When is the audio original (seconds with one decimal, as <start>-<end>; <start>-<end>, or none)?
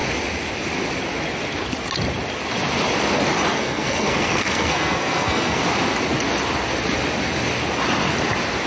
0.0-3.5; 5.6-8.7